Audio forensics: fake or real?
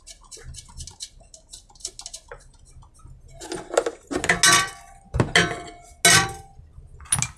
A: real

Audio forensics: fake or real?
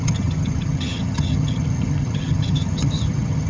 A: fake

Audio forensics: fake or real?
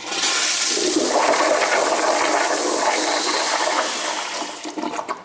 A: real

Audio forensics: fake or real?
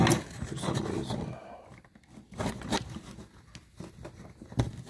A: real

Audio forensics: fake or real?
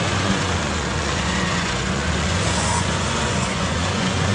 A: fake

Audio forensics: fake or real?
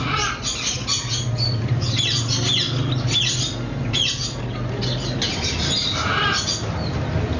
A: real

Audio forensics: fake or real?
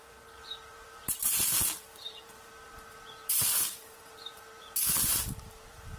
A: fake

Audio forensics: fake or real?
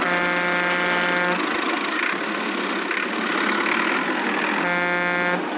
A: real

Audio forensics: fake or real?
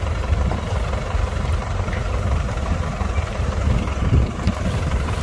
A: fake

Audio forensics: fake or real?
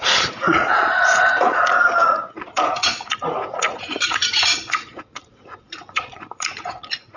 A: fake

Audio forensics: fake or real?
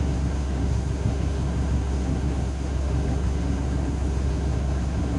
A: fake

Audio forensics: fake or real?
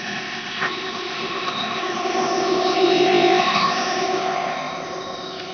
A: fake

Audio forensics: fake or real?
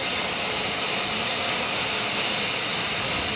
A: real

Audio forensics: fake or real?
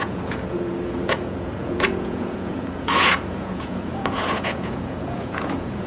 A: fake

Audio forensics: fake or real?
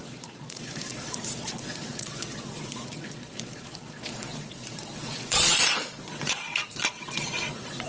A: fake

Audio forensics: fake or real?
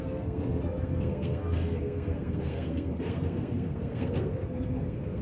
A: fake